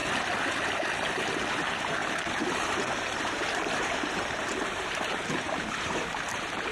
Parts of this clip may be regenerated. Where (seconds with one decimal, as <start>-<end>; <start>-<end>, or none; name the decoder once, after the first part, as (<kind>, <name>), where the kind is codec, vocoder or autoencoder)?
2.0-6.0 (vocoder, BigVGAN v2)